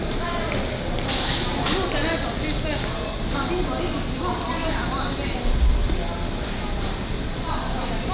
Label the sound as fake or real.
real